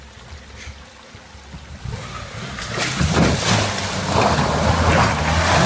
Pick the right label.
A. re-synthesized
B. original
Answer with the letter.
B